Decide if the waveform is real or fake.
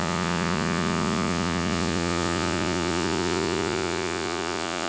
fake